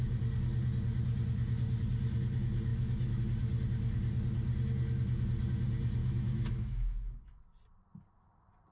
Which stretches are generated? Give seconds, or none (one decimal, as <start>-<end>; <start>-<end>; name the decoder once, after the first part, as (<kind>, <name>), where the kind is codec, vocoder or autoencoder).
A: 2.7-3.2 (autoencoder, DAC-VAE); 6.0-7.2